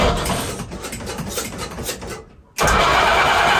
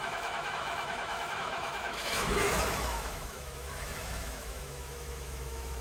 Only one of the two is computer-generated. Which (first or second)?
second